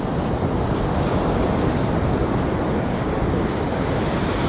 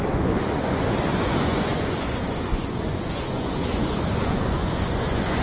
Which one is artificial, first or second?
second